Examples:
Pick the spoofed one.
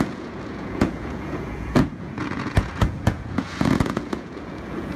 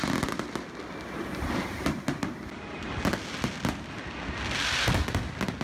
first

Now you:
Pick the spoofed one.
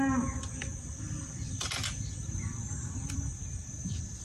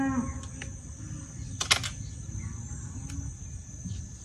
first